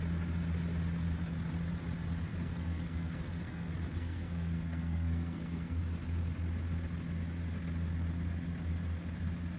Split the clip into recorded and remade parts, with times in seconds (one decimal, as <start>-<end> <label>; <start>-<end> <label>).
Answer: 0.0-2.3 recorded; 2.3-5.8 remade; 5.8-9.6 recorded

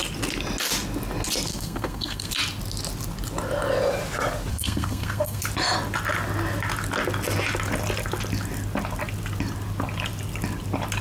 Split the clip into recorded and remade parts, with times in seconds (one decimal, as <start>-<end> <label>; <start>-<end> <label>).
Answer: 0.0-1.5 recorded; 1.5-2.3 remade; 2.3-4.5 recorded; 4.5-5.4 remade; 5.4-11.0 recorded

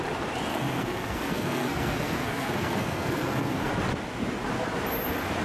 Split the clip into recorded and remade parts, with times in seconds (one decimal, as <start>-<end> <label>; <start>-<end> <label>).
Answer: 0.0-0.5 recorded; 0.5-3.7 remade; 3.7-5.4 recorded

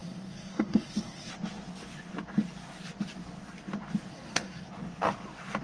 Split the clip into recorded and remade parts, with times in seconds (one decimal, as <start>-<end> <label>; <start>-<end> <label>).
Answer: 0.0-1.3 remade; 1.3-4.1 recorded; 4.1-4.7 remade; 4.7-5.6 recorded

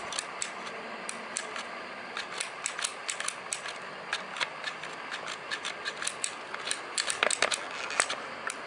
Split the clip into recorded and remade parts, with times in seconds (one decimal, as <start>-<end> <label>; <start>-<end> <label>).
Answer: 0.0-8.7 recorded

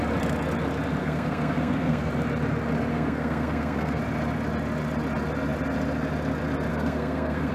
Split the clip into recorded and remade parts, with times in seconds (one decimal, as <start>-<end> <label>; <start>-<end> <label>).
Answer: 0.0-1.0 recorded; 1.0-2.1 remade; 2.1-2.9 recorded; 2.9-4.0 remade; 4.0-6.7 recorded; 6.7-7.5 remade

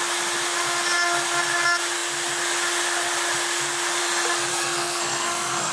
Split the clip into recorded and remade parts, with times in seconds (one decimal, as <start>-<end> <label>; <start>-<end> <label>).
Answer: 0.0-4.5 recorded; 4.5-5.7 remade

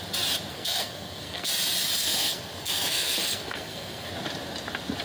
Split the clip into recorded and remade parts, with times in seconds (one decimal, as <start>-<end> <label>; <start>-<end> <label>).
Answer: 0.0-0.5 recorded; 0.5-1.5 remade; 1.5-2.0 recorded; 2.0-4.1 remade; 4.1-5.0 recorded